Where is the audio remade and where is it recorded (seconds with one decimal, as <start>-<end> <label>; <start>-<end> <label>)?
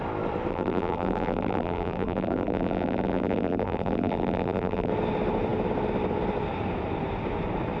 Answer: 0.0-0.5 recorded; 0.5-4.9 remade; 4.9-7.8 recorded